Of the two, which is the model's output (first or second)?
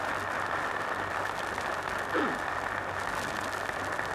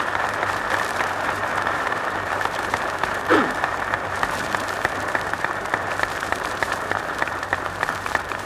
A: second